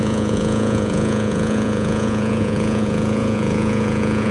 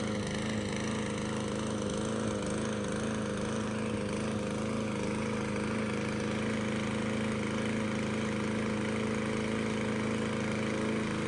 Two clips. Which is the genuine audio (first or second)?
second